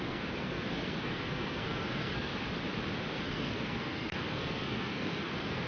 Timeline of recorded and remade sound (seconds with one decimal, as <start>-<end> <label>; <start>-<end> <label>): 0.0-2.3 remade; 2.3-3.1 recorded; 3.1-5.7 remade